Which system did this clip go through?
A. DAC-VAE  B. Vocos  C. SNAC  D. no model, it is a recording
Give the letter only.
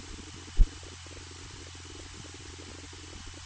D